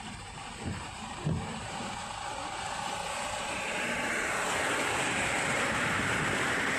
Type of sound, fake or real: fake